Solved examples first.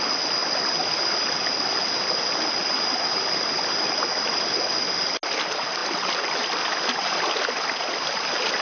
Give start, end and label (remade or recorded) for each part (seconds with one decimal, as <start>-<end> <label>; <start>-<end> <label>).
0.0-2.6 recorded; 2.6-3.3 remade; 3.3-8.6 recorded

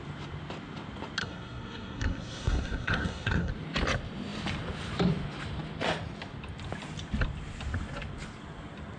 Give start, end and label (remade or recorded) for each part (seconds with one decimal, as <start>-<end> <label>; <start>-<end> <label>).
0.0-1.2 recorded; 1.2-3.5 remade; 3.5-9.0 recorded

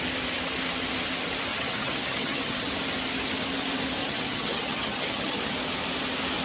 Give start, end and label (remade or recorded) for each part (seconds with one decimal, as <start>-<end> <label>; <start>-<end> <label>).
0.0-1.5 recorded; 1.5-2.7 remade; 2.7-4.0 recorded; 4.0-5.5 remade; 5.5-6.4 recorded

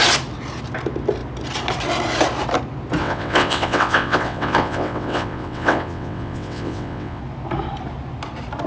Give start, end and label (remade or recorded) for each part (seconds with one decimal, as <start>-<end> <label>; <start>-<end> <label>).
0.0-3.0 recorded; 3.0-7.2 remade; 7.2-8.7 recorded